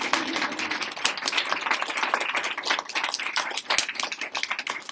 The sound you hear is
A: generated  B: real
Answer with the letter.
B